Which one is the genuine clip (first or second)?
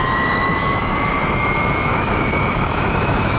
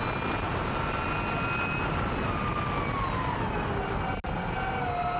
second